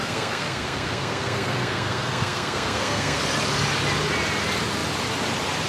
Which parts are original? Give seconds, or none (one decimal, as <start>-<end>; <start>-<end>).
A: 3.2-5.7